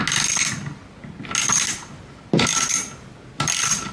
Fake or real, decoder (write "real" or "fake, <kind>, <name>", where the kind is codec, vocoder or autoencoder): real